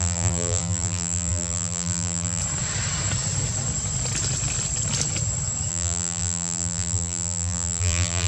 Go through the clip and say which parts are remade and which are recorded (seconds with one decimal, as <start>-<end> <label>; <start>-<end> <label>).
0.0-2.4 remade; 2.4-5.7 recorded; 5.7-8.3 remade